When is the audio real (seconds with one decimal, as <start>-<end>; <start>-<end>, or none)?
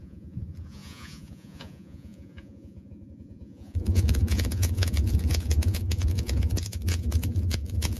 none